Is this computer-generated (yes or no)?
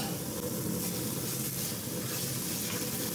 no